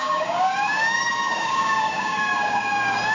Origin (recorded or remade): remade